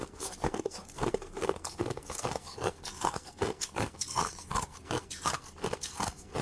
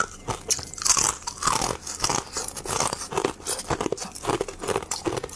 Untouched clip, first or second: second